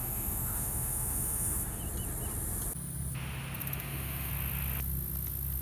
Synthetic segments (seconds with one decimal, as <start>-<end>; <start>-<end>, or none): 0.0-1.8; 3.6-4.3